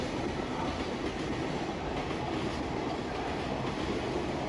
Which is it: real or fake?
real